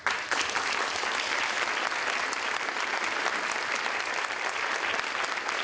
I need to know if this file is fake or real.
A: real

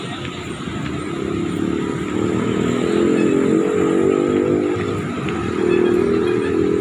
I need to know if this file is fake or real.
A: real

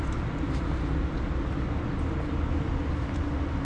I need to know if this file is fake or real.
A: real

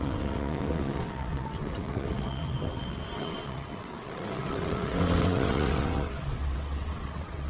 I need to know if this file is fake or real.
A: fake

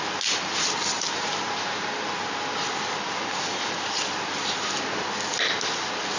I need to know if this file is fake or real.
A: real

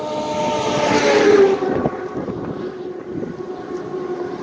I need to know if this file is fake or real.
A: real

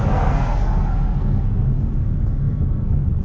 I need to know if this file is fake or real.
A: fake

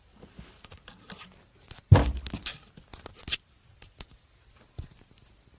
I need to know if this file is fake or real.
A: real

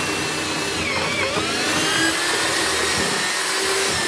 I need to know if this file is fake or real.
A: real